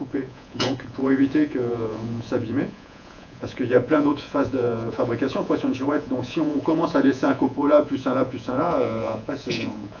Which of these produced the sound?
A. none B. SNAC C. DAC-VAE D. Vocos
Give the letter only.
D